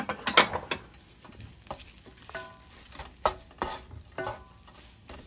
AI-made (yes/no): no